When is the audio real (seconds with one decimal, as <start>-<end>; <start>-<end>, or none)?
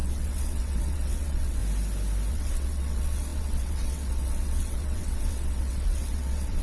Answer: 1.6-2.3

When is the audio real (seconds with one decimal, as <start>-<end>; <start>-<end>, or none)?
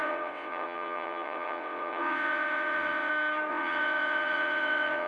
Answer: 3.1-3.5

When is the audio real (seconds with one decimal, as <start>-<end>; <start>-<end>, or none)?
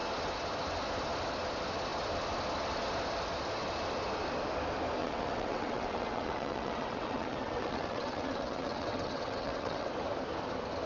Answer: 0.0-5.0; 9.9-10.9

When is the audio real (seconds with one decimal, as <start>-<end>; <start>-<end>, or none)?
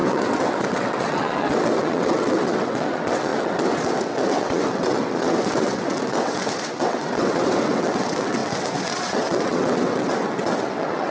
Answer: none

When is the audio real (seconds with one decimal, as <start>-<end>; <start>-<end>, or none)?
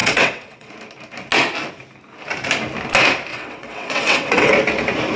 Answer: 0.7-3.3; 4.5-5.2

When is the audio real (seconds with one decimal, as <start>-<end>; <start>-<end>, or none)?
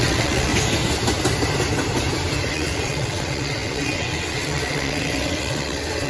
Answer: 0.5-2.5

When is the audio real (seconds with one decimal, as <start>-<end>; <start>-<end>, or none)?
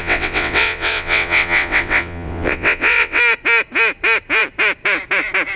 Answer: 3.2-5.6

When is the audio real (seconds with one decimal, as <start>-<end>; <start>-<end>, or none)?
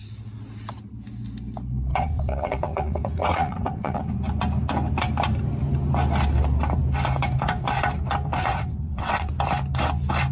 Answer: 0.0-1.9; 4.1-8.4; 9.3-10.3